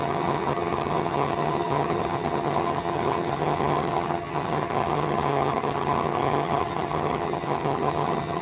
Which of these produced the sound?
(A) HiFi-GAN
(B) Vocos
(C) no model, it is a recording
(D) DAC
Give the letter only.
A